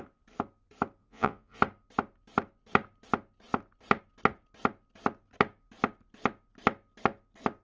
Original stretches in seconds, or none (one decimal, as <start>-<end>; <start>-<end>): 0.0-1.0; 1.6-7.6